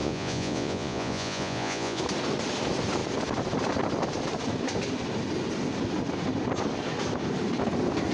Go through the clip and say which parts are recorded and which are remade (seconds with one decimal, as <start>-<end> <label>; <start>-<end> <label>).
0.0-2.0 remade; 2.0-8.1 recorded